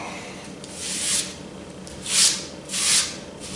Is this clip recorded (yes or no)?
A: yes